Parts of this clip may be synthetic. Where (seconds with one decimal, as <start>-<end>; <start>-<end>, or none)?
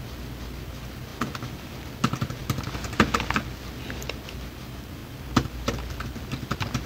none